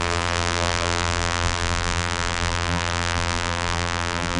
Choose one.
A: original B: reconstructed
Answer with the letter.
B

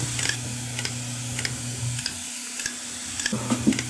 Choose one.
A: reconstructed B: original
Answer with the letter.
B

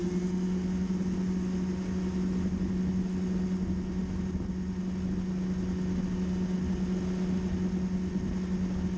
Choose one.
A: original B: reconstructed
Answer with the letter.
A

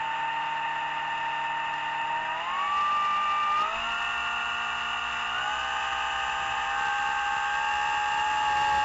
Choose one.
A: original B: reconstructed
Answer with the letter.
A